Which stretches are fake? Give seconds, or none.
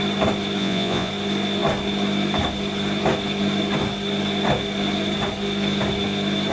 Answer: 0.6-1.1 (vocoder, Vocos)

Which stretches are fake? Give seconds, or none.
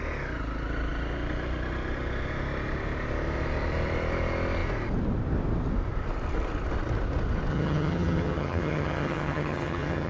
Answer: 7.5-10.1 (vocoder, HiFi-GAN)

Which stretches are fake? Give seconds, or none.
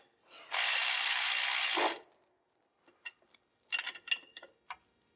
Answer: none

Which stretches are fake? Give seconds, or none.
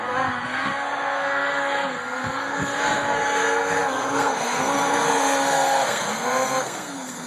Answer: 0.0-7.3 (codec, SNAC)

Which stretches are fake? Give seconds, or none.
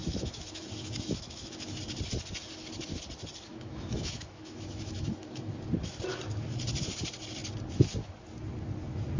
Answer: 0.0-1.8 (autoencoder, DAC-VAE); 3.5-5.5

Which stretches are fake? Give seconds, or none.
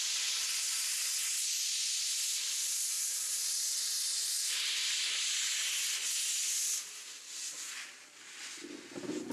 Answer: none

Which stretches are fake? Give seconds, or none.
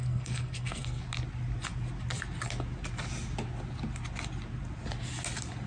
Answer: 0.0-1.0 (codec, SNAC)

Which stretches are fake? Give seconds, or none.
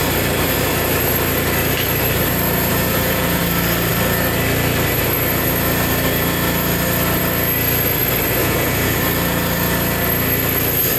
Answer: 2.7-3.4 (vocoder, Vocos); 8.4-9.0